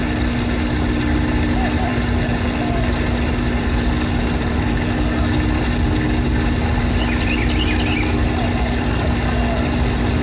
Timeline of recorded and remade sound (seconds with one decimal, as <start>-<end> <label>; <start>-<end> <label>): 0.0-10.2 recorded